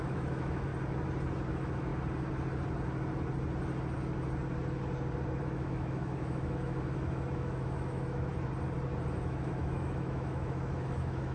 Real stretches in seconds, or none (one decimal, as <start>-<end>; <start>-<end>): 0.7-1.5; 1.9-5.4; 8.3-9.2